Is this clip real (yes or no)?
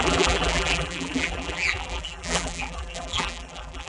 no